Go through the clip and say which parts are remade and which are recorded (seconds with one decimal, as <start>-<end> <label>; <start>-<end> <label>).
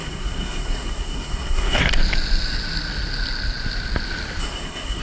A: 0.0-1.8 remade; 1.8-4.4 recorded; 4.4-5.0 remade